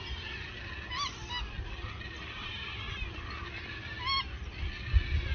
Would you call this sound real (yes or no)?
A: yes